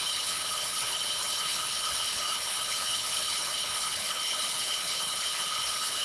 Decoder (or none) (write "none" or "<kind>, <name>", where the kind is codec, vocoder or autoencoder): codec, HILCodec